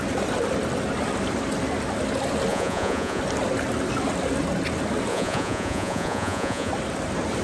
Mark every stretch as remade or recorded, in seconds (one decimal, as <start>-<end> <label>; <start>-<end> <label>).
0.0-2.5 recorded; 2.5-3.2 remade; 3.2-5.1 recorded; 5.1-6.7 remade; 6.7-7.4 recorded